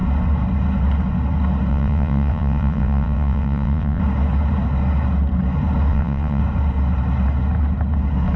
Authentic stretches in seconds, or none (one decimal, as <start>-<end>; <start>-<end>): 0.0-1.7; 4.0-5.9; 6.4-8.4